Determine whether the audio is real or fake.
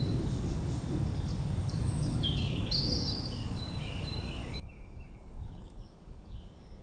fake